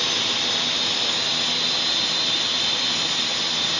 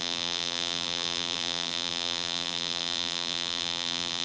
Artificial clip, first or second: second